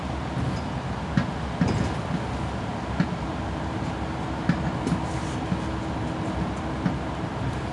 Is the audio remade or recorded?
recorded